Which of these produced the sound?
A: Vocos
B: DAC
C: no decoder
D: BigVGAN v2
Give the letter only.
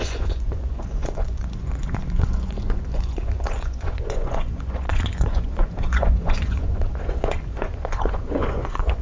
A